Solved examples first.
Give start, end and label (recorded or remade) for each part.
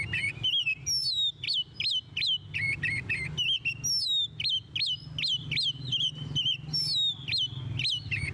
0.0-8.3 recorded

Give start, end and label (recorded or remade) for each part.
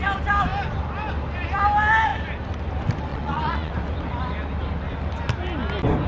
0.0-3.1 recorded; 3.1-3.7 remade; 3.7-6.1 recorded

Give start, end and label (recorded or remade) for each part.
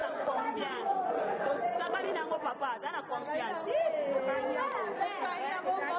0.0-2.6 remade; 2.6-6.0 recorded